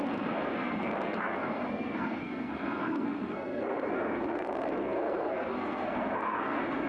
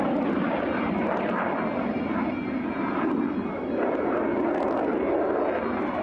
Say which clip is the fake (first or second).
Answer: first